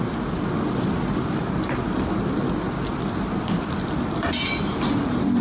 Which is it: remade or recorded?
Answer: recorded